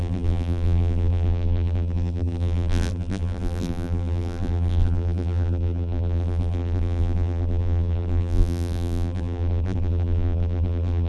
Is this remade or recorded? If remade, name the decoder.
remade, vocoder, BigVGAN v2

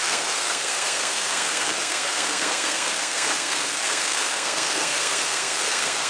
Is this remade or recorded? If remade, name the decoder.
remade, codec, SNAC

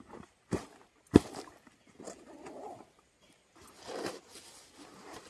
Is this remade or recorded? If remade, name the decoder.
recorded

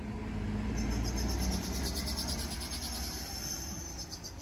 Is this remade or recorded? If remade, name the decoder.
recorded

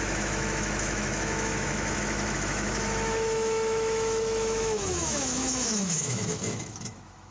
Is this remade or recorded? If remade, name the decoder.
remade, autoencoder, DAC-VAE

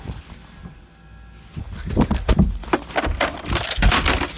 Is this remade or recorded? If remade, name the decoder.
recorded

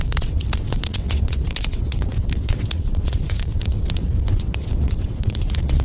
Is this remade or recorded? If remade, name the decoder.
remade, vocoder, WaveNeXt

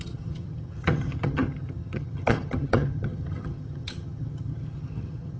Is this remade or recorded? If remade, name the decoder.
remade, vocoder, HiFi-GAN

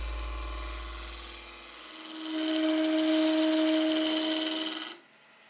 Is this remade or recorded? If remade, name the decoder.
recorded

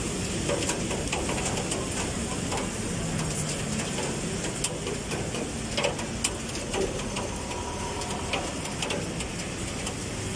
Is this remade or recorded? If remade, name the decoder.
recorded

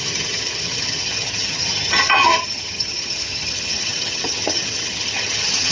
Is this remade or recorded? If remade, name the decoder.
remade, vocoder, HiFi-GAN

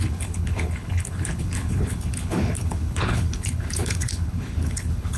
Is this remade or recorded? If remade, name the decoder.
remade, codec, HILCodec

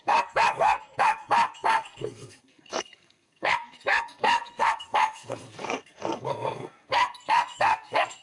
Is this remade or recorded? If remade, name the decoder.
remade, codec, SNAC